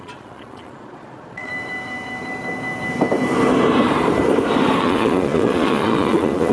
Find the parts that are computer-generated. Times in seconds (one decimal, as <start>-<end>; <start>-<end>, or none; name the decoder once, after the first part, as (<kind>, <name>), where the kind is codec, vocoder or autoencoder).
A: 0.0-1.5 (vocoder, Vocos); 4.8-6.5